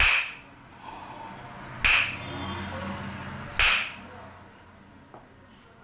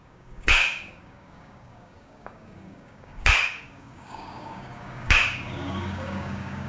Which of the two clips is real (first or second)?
first